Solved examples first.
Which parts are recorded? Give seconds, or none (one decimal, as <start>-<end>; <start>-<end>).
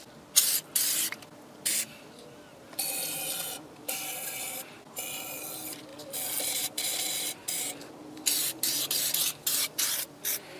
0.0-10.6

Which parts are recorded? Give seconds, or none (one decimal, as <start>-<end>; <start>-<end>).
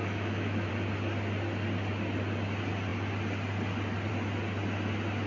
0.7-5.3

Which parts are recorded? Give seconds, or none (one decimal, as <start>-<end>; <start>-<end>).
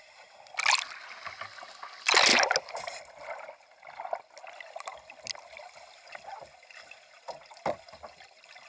0.0-8.7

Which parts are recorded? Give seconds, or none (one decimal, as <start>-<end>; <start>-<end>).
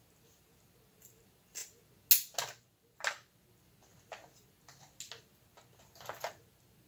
0.0-6.9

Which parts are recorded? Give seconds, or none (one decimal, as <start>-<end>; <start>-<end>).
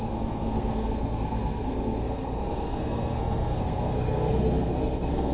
none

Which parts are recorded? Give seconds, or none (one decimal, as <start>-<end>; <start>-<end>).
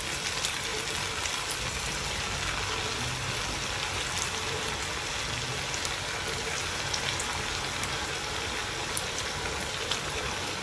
0.0-10.6